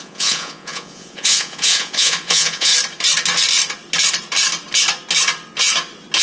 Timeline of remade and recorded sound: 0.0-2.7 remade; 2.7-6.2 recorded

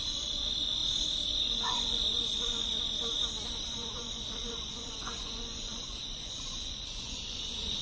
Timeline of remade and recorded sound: 0.0-0.8 remade; 0.8-1.4 recorded; 1.4-2.7 remade; 2.7-3.7 recorded; 3.7-7.8 remade

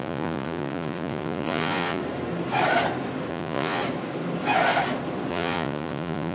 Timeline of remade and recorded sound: 0.0-2.0 remade; 2.0-3.3 recorded; 3.3-3.8 remade; 3.8-5.3 recorded; 5.3-6.3 remade

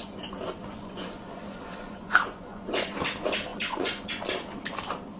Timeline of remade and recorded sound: 0.0-3.0 remade; 3.0-3.5 recorded; 3.5-4.2 remade; 4.2-5.2 recorded

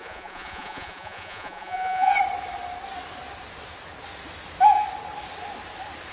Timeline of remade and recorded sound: 0.0-2.1 remade; 2.1-6.1 recorded

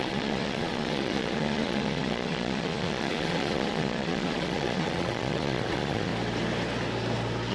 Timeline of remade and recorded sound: 0.0-6.1 remade; 6.1-7.5 recorded

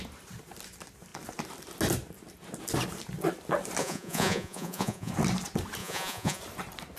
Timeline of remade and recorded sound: 0.0-3.8 recorded; 3.8-5.1 remade; 5.1-5.8 recorded; 5.8-6.4 remade; 6.4-7.0 recorded

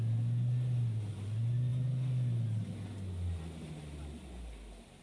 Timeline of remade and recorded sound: 0.0-5.0 recorded